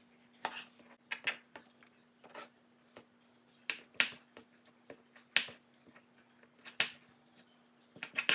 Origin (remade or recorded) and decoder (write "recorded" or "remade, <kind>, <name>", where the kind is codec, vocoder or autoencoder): recorded